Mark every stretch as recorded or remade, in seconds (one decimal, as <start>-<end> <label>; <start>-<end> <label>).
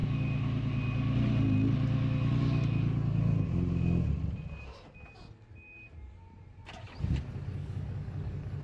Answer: 0.0-7.6 recorded; 7.6-8.6 remade